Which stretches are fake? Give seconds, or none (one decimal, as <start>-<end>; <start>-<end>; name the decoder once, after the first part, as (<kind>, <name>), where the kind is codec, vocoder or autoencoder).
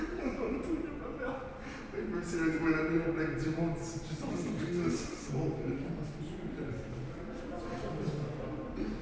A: 4.3-5.3 (autoencoder, DAC-VAE)